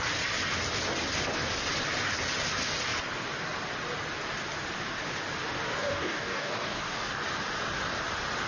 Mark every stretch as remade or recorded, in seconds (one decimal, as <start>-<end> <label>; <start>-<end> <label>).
0.0-5.8 recorded; 5.8-7.1 remade; 7.1-8.5 recorded